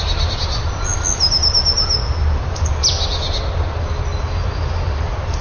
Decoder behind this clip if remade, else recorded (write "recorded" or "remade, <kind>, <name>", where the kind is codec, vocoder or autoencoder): recorded